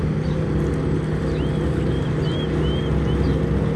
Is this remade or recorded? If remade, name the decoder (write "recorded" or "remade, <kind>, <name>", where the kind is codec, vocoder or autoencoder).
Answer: recorded